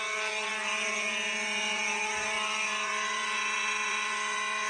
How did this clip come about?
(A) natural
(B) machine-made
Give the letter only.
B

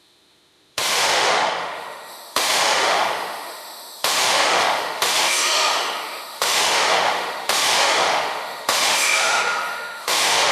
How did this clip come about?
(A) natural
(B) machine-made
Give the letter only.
B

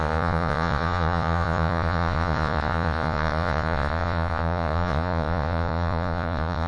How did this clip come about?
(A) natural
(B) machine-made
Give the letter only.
B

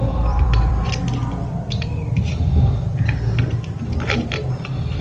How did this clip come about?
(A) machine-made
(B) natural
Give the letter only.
A